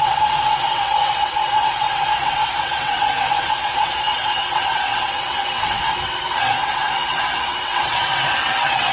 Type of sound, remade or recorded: remade